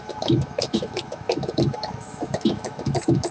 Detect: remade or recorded remade